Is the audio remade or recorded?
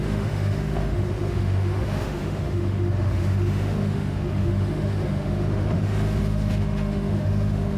remade